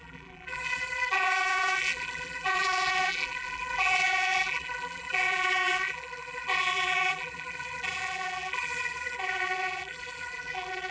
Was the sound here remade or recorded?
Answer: remade